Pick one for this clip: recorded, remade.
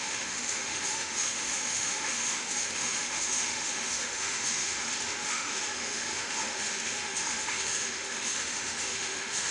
remade